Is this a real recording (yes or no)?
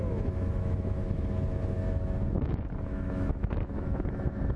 no